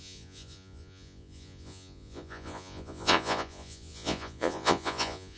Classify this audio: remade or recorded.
remade